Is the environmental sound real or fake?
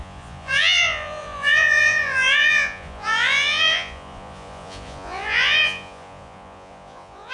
fake